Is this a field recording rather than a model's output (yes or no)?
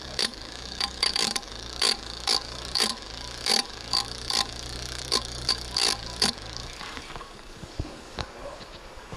no